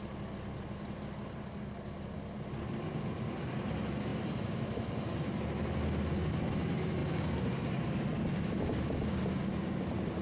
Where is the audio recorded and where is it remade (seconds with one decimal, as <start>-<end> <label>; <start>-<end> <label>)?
0.0-10.2 recorded